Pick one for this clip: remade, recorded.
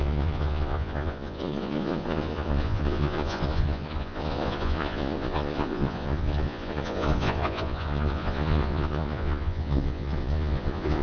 remade